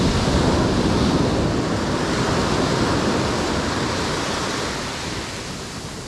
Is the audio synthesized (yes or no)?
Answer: no